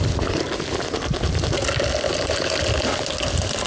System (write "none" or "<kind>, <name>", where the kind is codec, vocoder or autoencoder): none